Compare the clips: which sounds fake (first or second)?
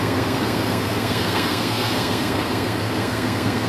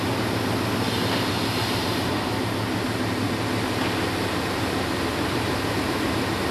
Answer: first